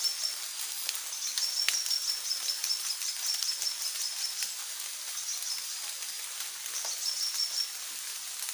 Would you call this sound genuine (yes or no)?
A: yes